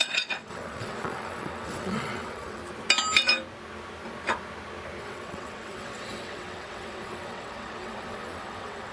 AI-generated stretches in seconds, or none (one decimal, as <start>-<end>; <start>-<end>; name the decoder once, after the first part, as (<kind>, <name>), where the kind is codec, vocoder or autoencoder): 0.0-2.6 (vocoder, WaveNeXt); 5.0-8.9